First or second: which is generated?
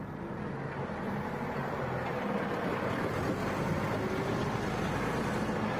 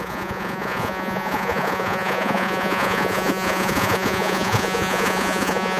second